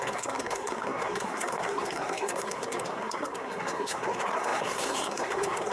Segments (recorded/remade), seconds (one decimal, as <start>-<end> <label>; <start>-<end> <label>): 0.0-5.7 remade